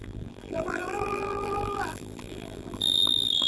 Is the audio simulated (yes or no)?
yes